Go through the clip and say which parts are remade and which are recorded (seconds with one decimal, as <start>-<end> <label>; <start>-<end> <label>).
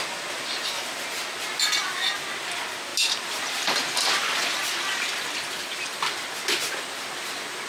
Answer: 0.0-7.7 recorded